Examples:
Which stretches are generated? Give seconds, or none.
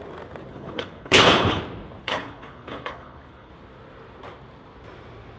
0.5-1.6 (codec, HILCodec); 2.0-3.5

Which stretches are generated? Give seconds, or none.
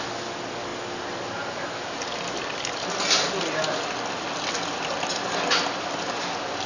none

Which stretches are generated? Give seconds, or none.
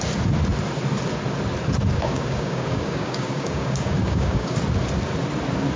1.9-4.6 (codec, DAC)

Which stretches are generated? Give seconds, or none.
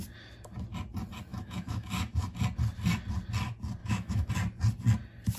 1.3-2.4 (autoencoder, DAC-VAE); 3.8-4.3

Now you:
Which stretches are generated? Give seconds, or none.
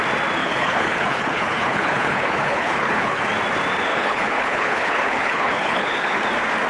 0.4-3.2 (codec, HILCodec); 3.9-6.2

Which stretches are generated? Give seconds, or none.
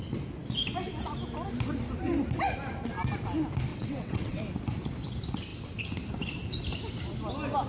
3.7-4.4 (vocoder, WaveNeXt)